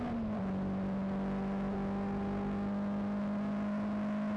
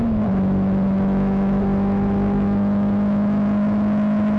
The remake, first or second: second